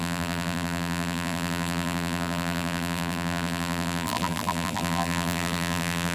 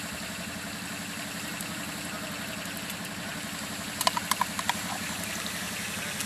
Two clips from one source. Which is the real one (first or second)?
second